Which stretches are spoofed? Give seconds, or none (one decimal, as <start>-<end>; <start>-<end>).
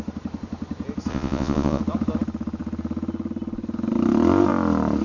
1.1-1.8